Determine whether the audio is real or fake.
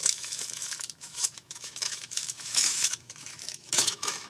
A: fake